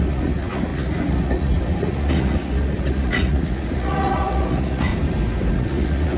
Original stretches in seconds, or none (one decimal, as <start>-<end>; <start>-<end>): 4.9-5.5